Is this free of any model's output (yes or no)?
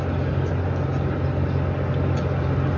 yes